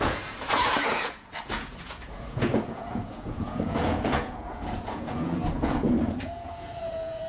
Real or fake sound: fake